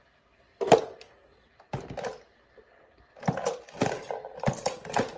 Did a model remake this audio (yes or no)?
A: no